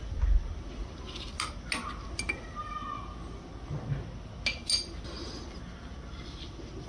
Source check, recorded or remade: recorded